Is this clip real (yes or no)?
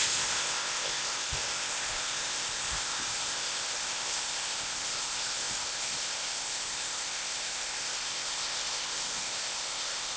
no